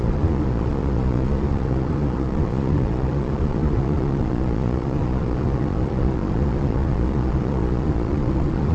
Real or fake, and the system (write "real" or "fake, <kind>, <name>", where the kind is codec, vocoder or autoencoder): fake, vocoder, Vocos